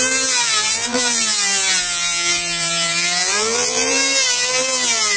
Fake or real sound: fake